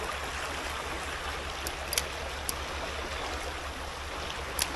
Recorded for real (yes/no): yes